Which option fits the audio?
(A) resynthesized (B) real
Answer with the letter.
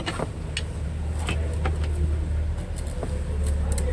B